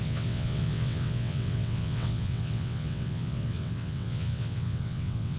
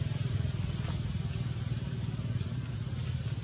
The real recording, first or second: second